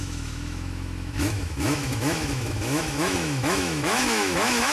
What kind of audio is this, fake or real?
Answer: fake